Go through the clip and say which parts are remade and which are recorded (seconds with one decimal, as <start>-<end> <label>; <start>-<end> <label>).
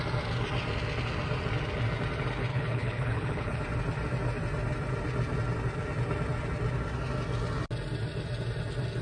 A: 0.0-2.5 recorded; 2.5-3.6 remade; 3.6-9.0 recorded